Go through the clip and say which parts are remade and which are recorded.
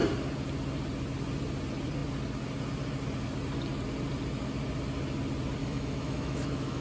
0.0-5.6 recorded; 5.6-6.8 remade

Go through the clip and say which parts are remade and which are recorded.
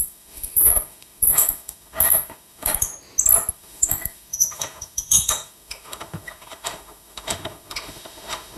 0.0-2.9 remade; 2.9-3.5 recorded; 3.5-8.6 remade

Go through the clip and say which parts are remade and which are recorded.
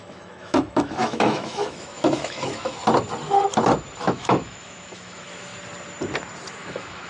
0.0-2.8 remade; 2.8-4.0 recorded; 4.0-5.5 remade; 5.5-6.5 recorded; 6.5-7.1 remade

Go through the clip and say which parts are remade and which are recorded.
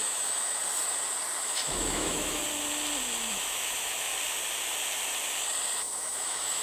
0.0-0.6 remade; 0.6-1.4 recorded; 1.4-2.4 remade; 2.4-3.3 recorded; 3.3-4.1 remade; 4.1-5.8 recorded; 5.8-6.6 remade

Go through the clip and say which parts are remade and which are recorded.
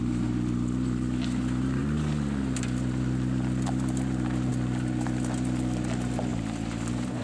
0.0-7.2 recorded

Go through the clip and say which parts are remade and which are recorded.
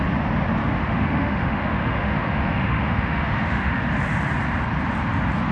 0.0-0.6 recorded; 0.6-3.9 remade; 3.9-5.5 recorded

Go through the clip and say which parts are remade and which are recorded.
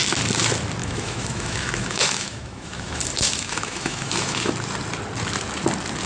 0.0-0.8 recorded; 0.8-4.5 remade; 4.5-6.1 recorded